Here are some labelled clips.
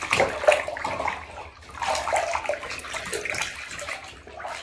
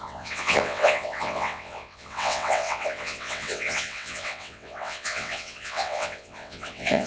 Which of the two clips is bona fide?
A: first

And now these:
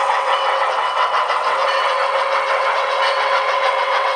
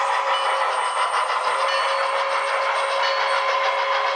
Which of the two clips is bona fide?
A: second